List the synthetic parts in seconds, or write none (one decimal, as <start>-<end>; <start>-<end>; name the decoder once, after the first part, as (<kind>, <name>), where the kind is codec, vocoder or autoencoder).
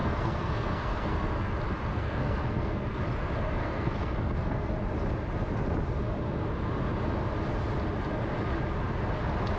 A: 0.0-1.5 (codec, SNAC); 1.9-3.0; 3.6-4.7